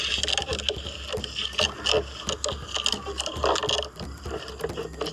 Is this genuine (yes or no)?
yes